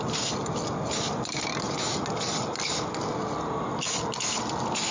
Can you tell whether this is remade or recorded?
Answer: recorded